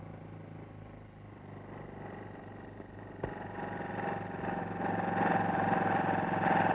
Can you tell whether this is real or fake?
fake